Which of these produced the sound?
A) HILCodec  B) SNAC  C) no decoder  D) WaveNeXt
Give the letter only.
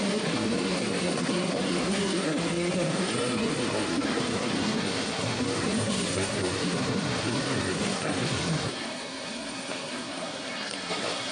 B